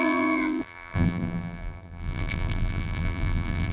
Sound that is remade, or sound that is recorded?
remade